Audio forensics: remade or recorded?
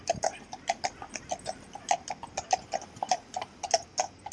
recorded